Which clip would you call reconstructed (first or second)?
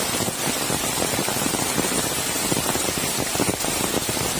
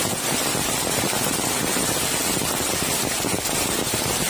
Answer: first